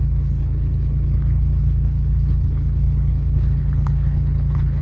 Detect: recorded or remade remade